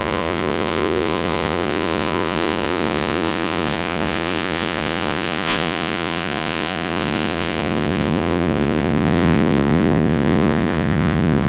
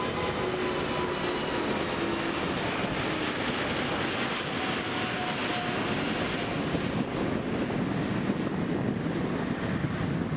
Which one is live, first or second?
second